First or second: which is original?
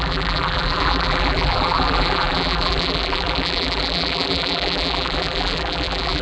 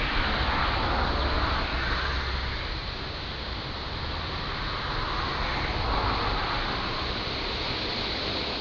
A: second